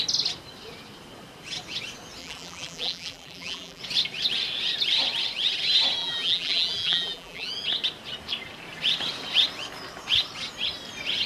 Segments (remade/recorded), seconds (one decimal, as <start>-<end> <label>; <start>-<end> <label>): 0.0-2.2 recorded; 2.2-3.8 remade; 3.8-6.0 recorded; 6.0-7.5 remade; 7.5-11.3 recorded